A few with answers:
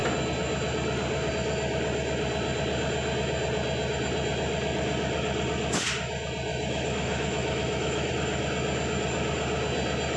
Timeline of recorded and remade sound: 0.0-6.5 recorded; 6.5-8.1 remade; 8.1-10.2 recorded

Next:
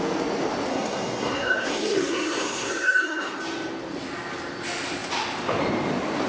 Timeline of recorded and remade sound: 0.0-0.7 recorded; 0.7-3.4 remade; 3.4-6.3 recorded